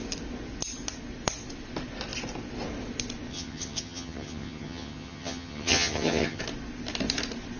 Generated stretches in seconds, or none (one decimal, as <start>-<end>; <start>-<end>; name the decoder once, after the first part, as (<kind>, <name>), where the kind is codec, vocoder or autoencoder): 3.3-6.4 (vocoder, HiFi-GAN)